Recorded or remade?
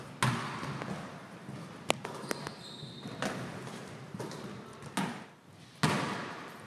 recorded